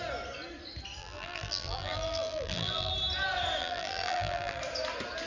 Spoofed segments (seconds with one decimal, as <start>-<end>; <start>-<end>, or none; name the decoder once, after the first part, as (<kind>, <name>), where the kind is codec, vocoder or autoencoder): 1.0-2.9 (vocoder, BigVGAN v2); 3.6-4.6